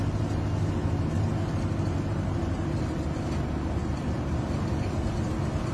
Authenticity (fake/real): real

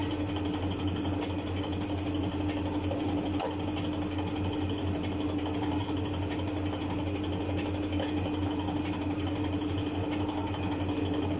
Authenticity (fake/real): real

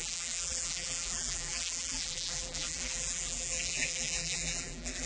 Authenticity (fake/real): fake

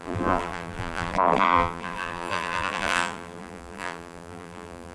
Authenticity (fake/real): fake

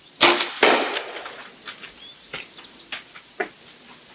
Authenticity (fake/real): real